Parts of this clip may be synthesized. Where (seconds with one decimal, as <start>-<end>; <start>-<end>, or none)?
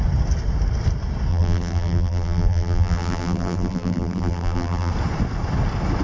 1.3-4.9